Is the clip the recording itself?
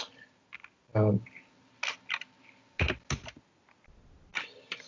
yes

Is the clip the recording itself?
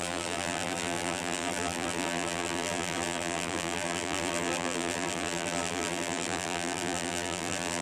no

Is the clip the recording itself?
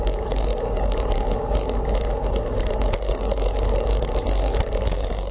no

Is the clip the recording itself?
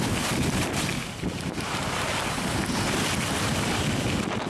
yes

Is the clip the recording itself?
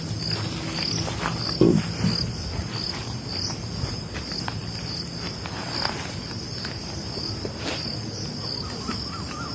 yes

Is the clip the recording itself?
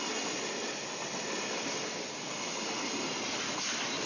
yes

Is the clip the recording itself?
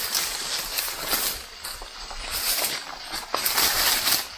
yes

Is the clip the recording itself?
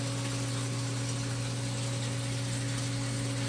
yes